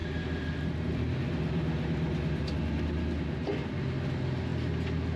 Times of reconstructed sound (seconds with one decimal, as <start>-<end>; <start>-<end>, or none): none